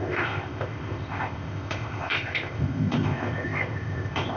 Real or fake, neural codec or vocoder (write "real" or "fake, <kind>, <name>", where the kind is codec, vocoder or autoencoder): fake, codec, ZipCodec